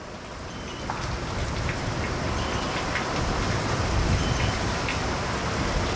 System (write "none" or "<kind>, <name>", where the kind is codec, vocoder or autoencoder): none